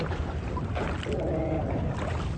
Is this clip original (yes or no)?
yes